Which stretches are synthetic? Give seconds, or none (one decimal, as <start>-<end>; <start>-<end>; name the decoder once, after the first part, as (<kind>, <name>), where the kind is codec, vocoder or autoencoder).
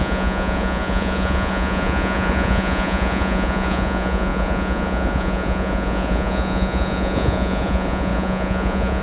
0.0-9.0 (vocoder, Vocos)